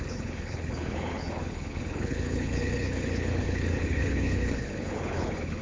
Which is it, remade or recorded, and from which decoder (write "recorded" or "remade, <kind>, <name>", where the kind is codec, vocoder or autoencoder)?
remade, codec, HILCodec